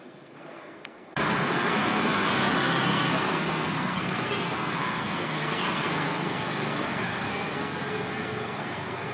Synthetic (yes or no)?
yes